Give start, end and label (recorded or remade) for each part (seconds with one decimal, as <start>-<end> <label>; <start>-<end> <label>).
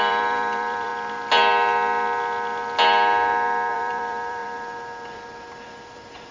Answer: 0.0-0.9 remade; 0.9-3.7 recorded; 3.7-6.3 remade